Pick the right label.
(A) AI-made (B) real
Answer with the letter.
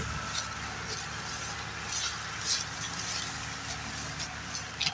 B